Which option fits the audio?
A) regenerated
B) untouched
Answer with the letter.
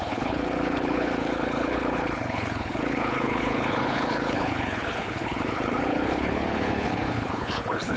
A